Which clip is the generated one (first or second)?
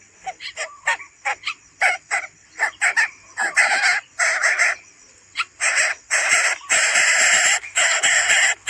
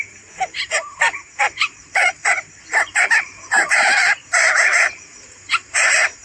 second